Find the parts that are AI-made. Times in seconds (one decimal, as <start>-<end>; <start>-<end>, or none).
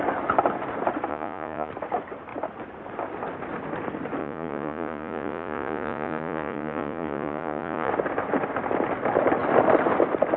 1.1-1.7; 4.2-7.9